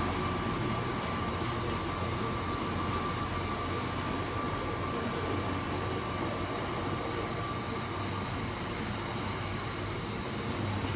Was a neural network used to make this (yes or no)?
no